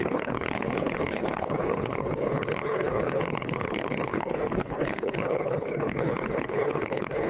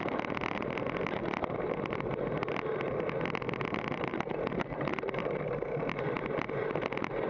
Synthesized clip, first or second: first